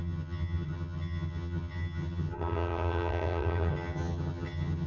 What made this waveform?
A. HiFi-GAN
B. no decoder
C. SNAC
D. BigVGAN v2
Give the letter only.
A